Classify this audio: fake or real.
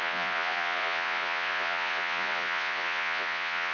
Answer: fake